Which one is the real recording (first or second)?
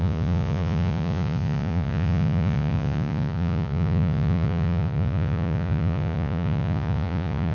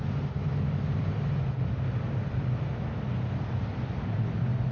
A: second